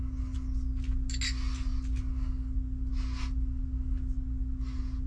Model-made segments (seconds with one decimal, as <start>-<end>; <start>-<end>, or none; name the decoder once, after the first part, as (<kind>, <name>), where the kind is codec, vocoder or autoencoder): none